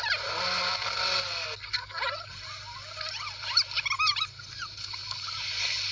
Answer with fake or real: real